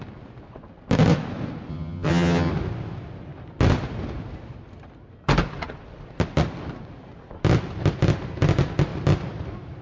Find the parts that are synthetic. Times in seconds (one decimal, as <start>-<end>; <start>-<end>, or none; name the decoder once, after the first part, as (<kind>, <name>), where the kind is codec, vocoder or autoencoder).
1.7-2.5 (vocoder, HiFi-GAN)